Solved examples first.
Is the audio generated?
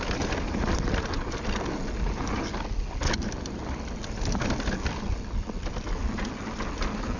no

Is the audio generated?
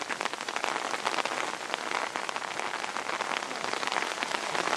no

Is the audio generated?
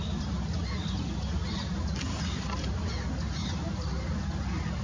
no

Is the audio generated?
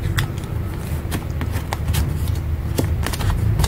no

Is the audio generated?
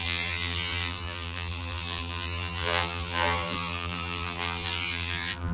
yes